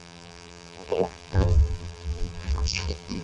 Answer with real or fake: fake